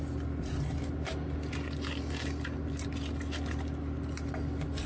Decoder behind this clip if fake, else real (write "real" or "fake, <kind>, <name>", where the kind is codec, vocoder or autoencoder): real